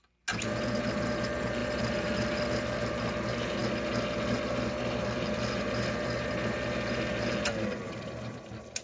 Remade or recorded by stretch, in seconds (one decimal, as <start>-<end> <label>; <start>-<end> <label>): 0.0-8.8 recorded